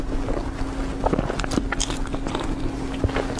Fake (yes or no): no